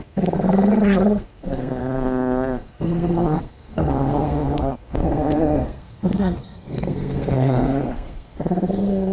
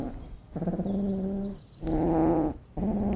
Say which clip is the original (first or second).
second